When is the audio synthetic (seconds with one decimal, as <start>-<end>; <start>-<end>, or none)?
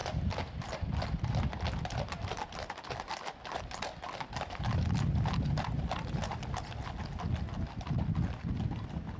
none